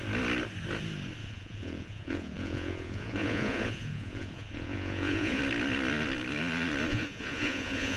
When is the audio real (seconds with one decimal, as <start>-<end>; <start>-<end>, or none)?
0.0-1.2; 5.4-6.9